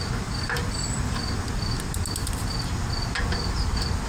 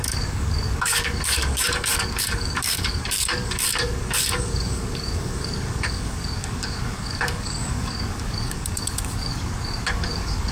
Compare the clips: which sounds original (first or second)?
first